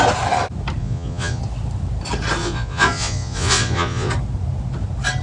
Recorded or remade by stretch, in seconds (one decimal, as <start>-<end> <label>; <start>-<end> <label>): 0.0-0.8 recorded; 0.8-1.4 remade; 1.4-2.4 recorded; 2.4-4.1 remade; 4.1-5.2 recorded

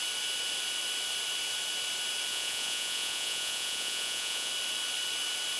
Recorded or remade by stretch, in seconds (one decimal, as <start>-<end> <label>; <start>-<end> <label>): 0.0-2.3 recorded; 2.3-4.5 remade; 4.5-5.6 recorded